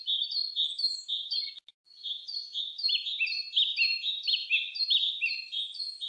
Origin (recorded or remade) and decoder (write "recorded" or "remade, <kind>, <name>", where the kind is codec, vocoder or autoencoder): remade, vocoder, BigVGAN v2